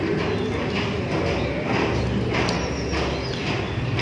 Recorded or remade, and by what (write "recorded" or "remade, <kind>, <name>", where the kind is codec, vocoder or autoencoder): recorded